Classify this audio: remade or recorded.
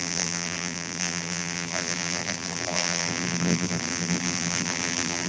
remade